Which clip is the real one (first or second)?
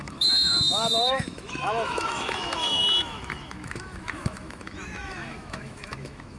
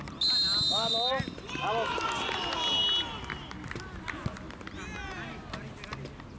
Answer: second